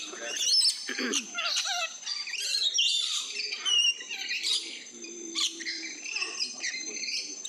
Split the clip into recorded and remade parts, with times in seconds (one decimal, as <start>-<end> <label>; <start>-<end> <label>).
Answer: 0.0-2.5 recorded; 2.5-7.0 remade; 7.0-7.5 recorded